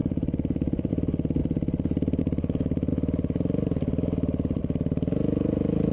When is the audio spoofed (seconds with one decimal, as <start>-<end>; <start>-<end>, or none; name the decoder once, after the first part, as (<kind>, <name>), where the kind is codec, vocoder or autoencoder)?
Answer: 0.0-0.9 (vocoder, BigVGAN v2)